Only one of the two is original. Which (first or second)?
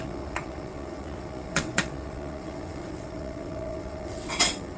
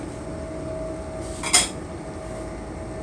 second